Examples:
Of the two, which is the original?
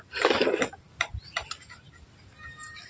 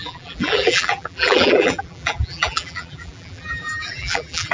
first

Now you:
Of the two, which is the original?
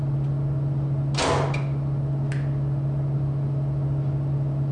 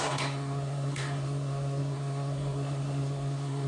first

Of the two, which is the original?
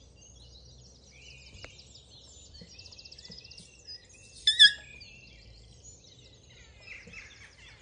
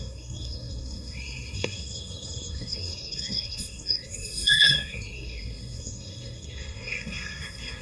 first